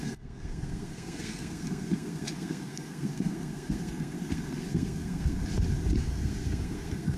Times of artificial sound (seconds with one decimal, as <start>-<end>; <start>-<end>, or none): 0.0-5.4; 6.0-7.2